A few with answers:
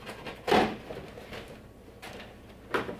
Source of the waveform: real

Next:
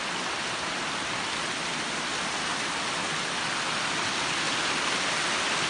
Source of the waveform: real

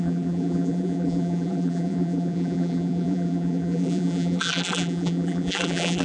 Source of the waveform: fake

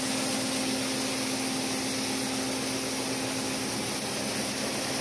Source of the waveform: real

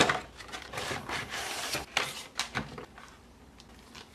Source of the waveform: fake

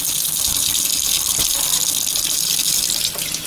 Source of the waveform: real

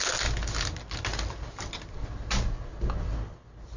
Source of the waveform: real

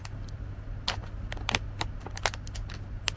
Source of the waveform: real